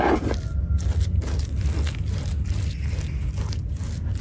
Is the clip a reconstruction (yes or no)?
no